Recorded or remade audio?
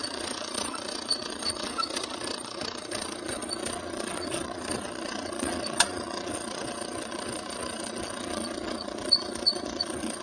remade